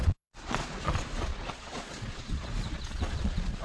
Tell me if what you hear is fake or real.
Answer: fake